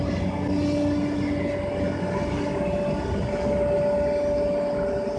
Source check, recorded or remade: recorded